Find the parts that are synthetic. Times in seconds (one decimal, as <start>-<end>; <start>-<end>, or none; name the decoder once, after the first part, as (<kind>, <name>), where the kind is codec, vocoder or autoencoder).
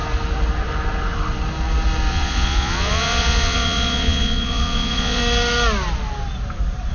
2.1-5.2 (vocoder, Vocos)